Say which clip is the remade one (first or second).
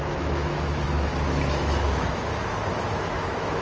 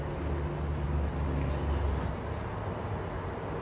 first